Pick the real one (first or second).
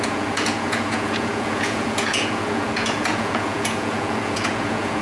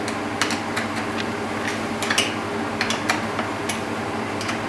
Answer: second